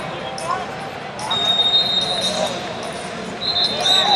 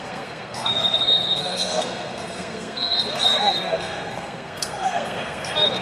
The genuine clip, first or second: first